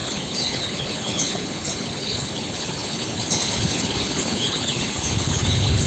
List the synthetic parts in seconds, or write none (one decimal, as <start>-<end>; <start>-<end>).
0.0-5.9